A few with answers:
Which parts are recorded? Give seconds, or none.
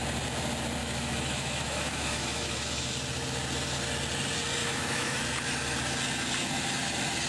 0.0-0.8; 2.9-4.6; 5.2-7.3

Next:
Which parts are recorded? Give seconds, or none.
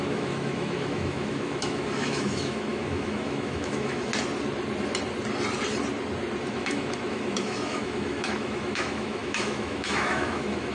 4.1-6.5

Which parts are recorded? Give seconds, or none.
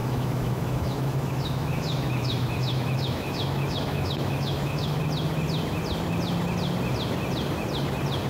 5.0-8.3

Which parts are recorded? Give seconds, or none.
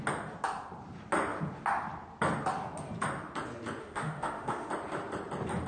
0.0-3.8; 4.7-5.7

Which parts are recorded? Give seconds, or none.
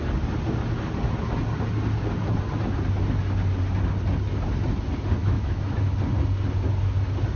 0.0-5.2; 5.8-7.4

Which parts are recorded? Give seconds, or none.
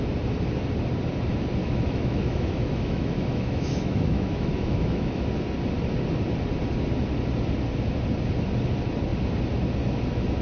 0.0-1.6; 5.3-10.4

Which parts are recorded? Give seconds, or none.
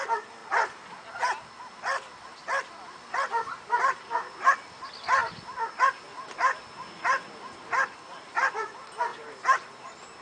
0.0-10.2